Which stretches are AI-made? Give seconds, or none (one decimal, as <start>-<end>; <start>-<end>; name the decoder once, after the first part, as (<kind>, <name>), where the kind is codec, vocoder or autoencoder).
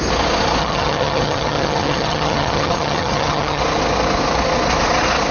0.6-3.6 (vocoder, HiFi-GAN)